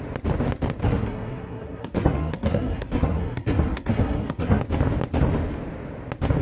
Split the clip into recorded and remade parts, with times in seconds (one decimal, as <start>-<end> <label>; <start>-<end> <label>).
0.0-0.8 recorded; 0.8-4.6 remade; 4.6-6.4 recorded